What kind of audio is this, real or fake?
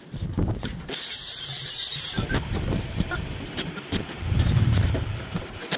fake